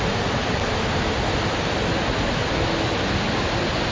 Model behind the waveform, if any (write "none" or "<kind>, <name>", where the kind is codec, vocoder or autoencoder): none